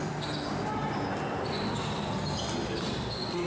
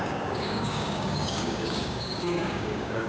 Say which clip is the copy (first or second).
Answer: second